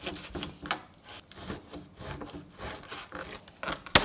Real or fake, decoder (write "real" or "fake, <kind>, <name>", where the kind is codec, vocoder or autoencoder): real